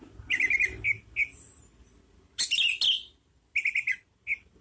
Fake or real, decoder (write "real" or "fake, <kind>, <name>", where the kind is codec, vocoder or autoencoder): real